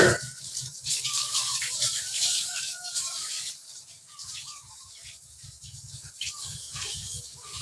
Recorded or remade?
remade